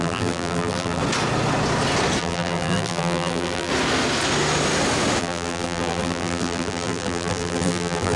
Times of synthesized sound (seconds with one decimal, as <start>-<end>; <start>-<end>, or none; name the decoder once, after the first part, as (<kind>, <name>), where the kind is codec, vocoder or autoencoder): 0.0-1.0 (vocoder, BigVGAN v2); 2.2-3.7; 5.2-8.2